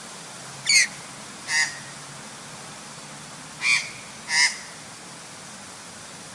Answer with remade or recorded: recorded